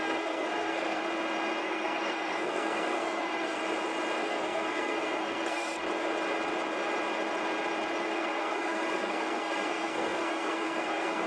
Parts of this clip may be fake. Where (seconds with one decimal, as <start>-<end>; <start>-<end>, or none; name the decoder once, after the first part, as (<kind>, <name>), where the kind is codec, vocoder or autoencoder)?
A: 0.0-1.0 (codec, SNAC); 1.6-3.6; 4.2-5.8; 8.0-11.3